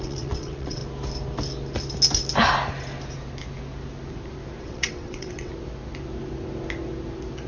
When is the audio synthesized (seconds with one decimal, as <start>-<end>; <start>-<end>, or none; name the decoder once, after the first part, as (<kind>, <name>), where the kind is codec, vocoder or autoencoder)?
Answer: 0.0-0.8 (vocoder, WaveNeXt); 4.6-5.5